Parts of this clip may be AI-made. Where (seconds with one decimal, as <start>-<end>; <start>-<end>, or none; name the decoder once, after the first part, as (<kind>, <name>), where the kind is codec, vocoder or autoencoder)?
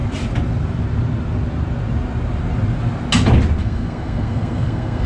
3.6-5.1 (codec, SNAC)